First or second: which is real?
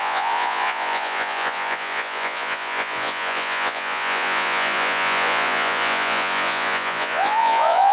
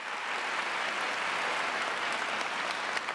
second